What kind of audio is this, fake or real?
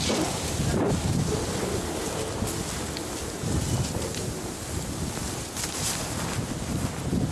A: real